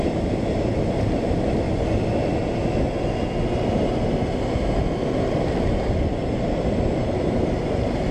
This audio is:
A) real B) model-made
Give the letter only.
A